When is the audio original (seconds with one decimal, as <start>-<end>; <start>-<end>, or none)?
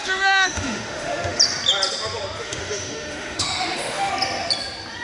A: 1.4-2.4; 4.1-5.0